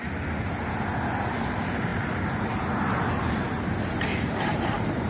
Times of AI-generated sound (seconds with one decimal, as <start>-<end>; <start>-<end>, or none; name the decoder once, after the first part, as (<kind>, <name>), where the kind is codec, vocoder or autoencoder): 1.3-1.9 (vocoder, BigVGAN v2); 4.0-5.1

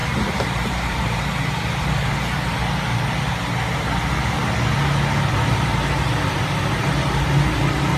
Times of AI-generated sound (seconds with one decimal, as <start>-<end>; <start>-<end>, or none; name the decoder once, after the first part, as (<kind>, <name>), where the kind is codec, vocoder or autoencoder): 0.0-2.6 (vocoder, BigVGAN v2); 5.3-8.0

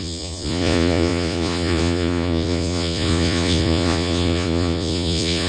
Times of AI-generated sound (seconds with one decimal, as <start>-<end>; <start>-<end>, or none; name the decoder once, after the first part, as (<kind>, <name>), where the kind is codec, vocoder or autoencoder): 0.0-5.5 (vocoder, Vocos)

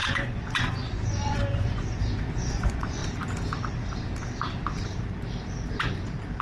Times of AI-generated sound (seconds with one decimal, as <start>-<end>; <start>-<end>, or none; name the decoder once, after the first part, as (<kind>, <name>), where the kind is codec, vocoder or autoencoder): 0.0-3.0 (vocoder, Vocos)

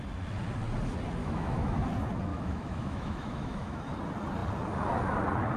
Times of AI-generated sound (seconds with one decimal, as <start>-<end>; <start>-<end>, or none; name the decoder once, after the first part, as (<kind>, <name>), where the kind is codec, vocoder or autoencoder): 1.2-1.8 (autoencoder, DAC-VAE); 2.3-3.8

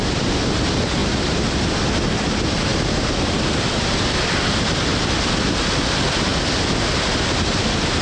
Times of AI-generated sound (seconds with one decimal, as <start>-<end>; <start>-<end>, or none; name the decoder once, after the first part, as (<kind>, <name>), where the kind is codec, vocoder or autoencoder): 1.0-1.7 (vocoder, BigVGAN v2); 2.7-5.6

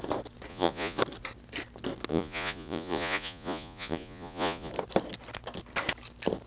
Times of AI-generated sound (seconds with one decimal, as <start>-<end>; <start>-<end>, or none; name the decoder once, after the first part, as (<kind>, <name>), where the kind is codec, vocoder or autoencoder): 0.5-1.0 (vocoder, Vocos); 2.1-4.7

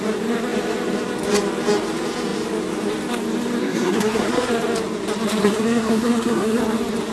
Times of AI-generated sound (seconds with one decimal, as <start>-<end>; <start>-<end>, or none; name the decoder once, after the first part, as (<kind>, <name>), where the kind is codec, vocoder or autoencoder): 3.6-4.5 (codec, SNAC); 5.4-6.6